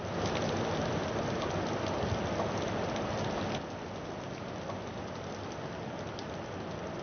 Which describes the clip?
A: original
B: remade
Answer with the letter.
A